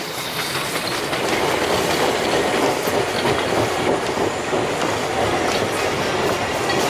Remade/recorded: recorded